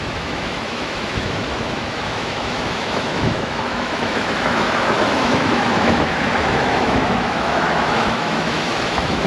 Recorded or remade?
remade